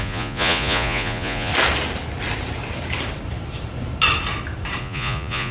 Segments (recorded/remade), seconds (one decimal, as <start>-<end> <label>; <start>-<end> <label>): 0.0-1.5 remade; 1.5-4.8 recorded; 4.8-5.5 remade